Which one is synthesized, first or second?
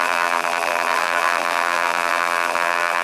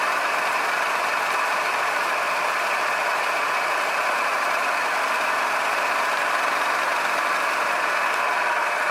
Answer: first